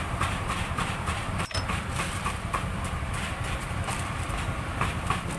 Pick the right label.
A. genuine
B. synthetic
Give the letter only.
B